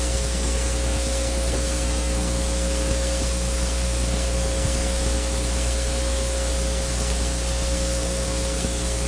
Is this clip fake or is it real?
fake